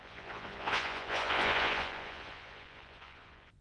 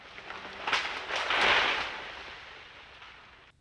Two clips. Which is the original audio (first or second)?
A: second